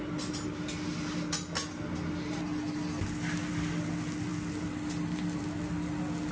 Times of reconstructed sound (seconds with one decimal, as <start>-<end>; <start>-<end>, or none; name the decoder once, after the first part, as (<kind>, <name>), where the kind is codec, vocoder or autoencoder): none